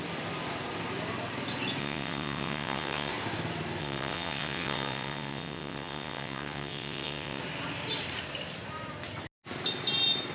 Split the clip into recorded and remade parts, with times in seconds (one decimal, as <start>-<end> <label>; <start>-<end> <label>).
0.0-1.8 recorded; 1.8-3.1 remade; 3.1-3.8 recorded; 3.8-7.4 remade; 7.4-10.3 recorded